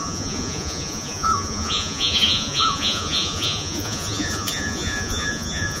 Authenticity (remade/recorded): remade